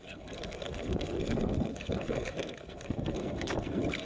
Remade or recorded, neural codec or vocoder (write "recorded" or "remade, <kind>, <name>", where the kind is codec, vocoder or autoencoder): remade, codec, SNAC